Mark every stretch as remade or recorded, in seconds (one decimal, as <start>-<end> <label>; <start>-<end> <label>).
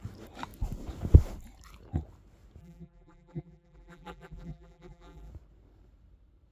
0.0-2.6 recorded; 2.6-5.3 remade; 5.3-6.5 recorded